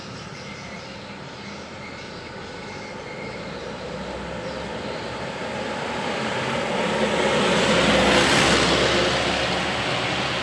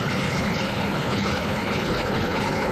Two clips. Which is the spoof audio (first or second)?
second